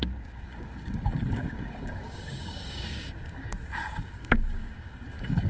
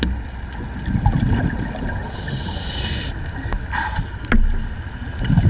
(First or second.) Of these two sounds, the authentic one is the second